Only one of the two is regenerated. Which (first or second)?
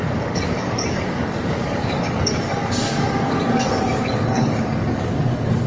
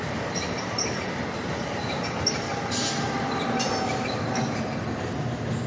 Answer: first